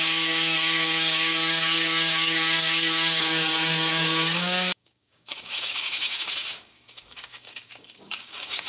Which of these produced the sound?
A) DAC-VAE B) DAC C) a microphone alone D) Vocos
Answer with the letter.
B